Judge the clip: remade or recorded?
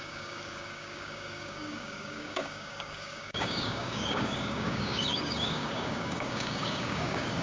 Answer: remade